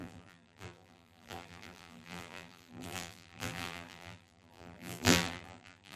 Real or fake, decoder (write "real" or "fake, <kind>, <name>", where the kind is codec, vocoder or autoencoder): fake, vocoder, BigVGAN v2